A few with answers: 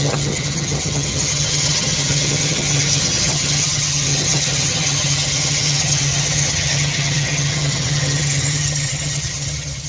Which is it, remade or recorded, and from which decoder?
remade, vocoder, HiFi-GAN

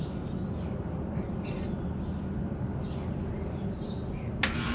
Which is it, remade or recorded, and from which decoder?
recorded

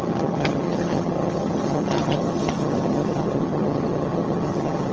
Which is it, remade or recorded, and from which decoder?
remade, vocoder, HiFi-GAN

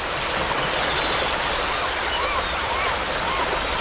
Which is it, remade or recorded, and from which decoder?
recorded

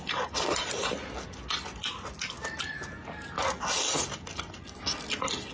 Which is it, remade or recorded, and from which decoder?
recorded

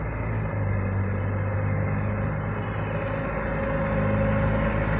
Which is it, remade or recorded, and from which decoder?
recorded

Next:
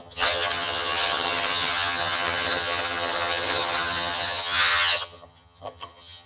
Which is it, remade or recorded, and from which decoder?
remade, vocoder, HiFi-GAN